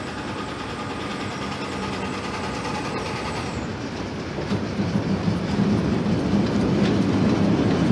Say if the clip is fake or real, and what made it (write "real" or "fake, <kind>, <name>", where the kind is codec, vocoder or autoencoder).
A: real